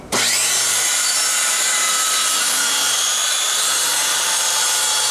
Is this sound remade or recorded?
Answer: remade